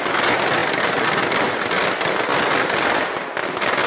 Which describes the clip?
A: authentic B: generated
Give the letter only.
A